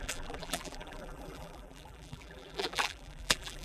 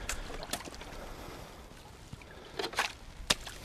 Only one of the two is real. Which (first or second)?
second